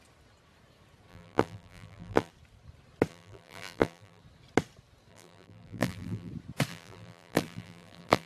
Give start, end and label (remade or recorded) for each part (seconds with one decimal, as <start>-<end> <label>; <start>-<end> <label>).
0.0-1.1 recorded; 1.1-2.3 remade; 2.3-3.1 recorded; 3.1-4.2 remade; 4.2-5.1 recorded; 5.1-6.3 remade; 6.3-6.7 recorded; 6.7-8.3 remade